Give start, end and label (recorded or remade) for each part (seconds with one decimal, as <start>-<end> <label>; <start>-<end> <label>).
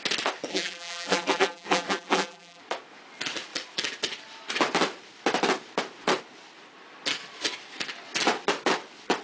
0.0-0.5 recorded; 0.5-2.6 remade; 2.6-9.2 recorded